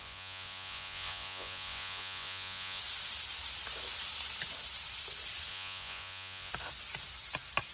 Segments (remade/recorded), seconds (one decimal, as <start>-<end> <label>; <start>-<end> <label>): 0.0-2.8 remade; 2.8-5.5 recorded; 5.5-6.5 remade; 6.5-7.7 recorded